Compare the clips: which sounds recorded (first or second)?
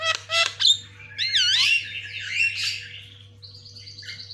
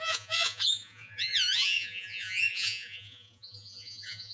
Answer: first